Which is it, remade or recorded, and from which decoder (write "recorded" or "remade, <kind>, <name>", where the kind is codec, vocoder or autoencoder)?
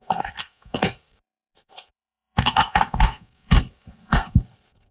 remade, codec, SNAC